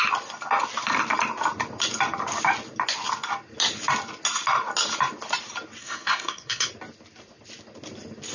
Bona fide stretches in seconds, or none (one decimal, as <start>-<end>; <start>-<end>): 0.0-5.8; 6.7-8.3